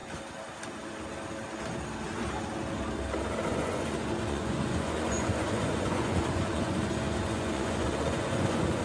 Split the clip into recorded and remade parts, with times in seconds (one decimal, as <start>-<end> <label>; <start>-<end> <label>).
0.0-3.5 recorded; 3.5-8.8 remade